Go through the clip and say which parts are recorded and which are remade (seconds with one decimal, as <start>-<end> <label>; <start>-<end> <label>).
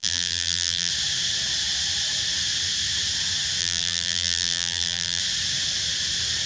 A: 0.0-0.9 remade; 0.9-3.6 recorded; 3.6-5.2 remade; 5.2-6.5 recorded